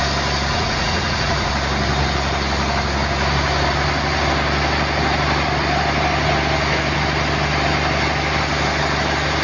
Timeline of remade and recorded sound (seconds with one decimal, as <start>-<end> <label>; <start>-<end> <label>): 0.0-0.5 recorded; 0.5-1.5 remade; 1.5-9.4 recorded